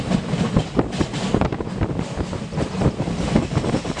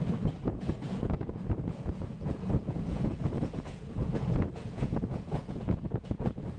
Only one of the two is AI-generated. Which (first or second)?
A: second